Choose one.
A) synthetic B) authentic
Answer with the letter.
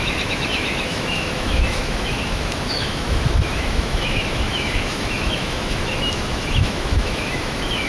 A